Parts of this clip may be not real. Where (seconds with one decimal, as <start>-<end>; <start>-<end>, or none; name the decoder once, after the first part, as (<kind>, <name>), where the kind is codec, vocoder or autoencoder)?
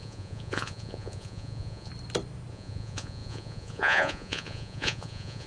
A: 0.0-1.9 (vocoder, Vocos); 2.5-5.5